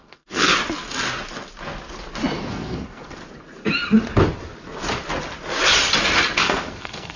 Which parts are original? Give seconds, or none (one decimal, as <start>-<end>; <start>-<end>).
0.5-2.5; 3.2-6.4